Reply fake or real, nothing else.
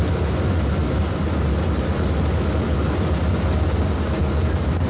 real